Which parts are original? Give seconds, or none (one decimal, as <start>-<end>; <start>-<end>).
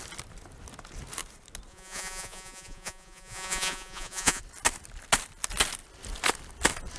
0.0-1.7; 4.4-7.0